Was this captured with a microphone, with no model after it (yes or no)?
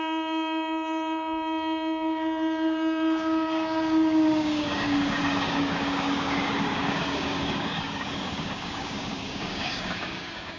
no